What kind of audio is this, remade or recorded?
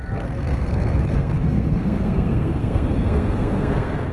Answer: remade